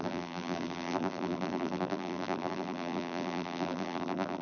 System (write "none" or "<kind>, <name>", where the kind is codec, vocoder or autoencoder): vocoder, BigVGAN v2